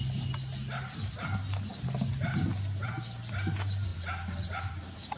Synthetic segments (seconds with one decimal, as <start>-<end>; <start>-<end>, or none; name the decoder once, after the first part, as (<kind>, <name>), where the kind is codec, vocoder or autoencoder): none